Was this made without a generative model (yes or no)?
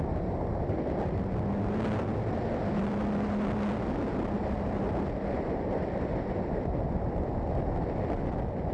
yes